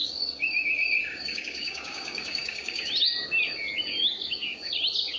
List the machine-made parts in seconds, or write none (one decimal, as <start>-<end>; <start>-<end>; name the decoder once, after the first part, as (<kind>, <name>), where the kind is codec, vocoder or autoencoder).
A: 0.0-2.9 (codec, DAC); 4.0-4.7